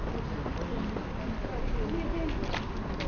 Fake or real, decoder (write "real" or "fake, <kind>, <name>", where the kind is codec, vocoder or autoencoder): real